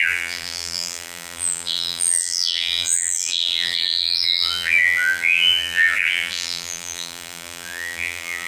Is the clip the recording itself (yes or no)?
no